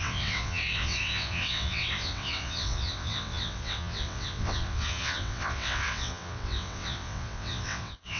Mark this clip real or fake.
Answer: fake